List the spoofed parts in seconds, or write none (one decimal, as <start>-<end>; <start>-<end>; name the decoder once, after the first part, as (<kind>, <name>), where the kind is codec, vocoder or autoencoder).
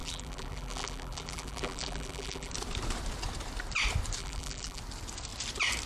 0.0-2.5 (vocoder, BigVGAN v2); 4.2-4.8